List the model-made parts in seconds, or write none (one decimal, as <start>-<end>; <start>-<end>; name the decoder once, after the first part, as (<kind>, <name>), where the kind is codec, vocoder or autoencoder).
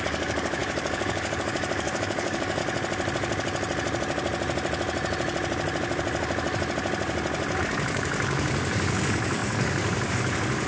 0.0-2.6 (codec, DAC); 7.6-10.7